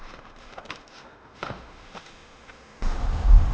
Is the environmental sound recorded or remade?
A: remade